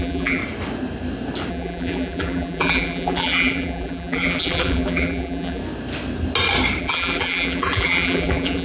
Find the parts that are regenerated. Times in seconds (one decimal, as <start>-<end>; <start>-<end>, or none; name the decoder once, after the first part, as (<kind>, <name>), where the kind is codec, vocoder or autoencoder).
0.0-0.4 (vocoder, BigVGAN v2); 1.5-5.6; 6.8-8.6